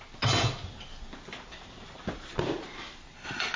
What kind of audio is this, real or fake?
real